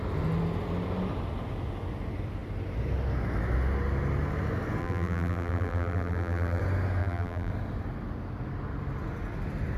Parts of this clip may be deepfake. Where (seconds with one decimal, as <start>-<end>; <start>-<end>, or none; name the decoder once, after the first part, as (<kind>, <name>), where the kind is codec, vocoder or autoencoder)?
4.8-6.6 (vocoder, BigVGAN v2); 7.0-7.5